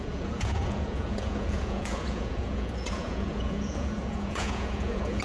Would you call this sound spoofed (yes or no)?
yes